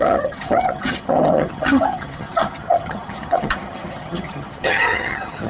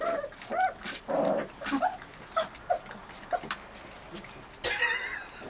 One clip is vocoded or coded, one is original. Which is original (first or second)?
second